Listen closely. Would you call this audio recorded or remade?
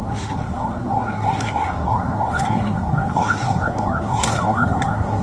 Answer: remade